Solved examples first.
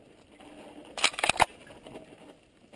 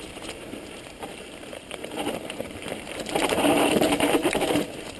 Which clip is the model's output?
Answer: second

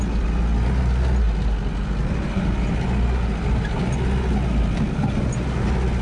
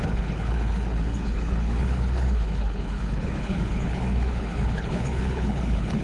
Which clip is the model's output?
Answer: second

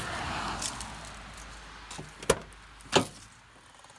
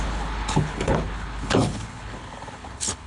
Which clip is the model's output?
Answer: second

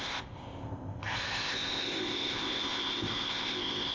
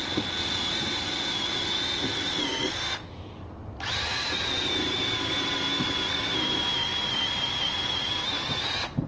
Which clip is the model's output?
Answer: first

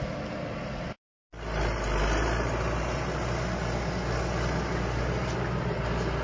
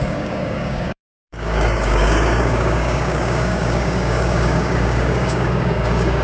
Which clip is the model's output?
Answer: second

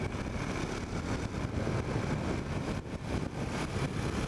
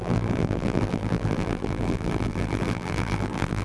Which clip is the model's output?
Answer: second